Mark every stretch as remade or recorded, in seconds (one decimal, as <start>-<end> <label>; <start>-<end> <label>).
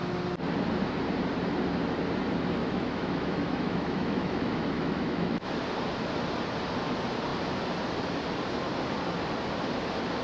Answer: 0.0-2.6 recorded; 2.6-5.5 remade; 5.5-10.2 recorded